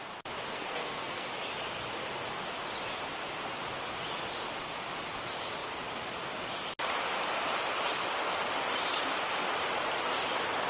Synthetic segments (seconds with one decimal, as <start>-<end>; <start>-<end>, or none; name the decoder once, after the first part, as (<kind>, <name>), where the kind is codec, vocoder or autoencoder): 0.5-1.3 (codec, SNAC)